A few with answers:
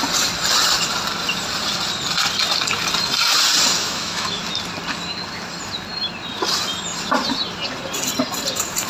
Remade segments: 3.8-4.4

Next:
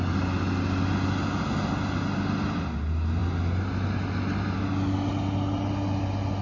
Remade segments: none

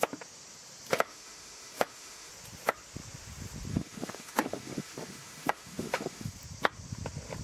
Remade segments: 0.9-2.3; 3.7-6.3